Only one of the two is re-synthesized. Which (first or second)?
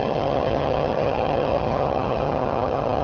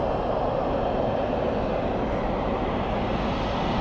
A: first